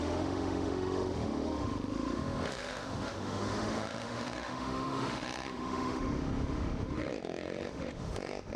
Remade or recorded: remade